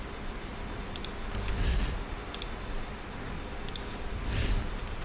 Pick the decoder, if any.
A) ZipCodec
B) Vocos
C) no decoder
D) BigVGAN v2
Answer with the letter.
C